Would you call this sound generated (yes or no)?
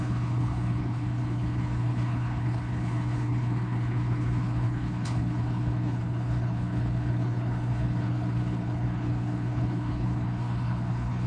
yes